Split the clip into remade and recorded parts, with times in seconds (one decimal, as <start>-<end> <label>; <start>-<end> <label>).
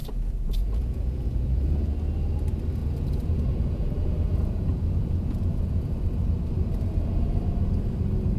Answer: 0.0-1.9 remade; 1.9-2.8 recorded; 2.8-6.3 remade; 6.3-8.4 recorded